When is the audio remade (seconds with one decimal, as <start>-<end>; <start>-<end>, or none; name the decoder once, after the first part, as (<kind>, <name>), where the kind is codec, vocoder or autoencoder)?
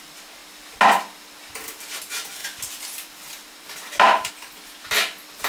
none